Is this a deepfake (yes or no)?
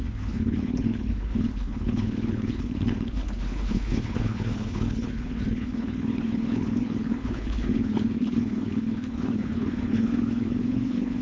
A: yes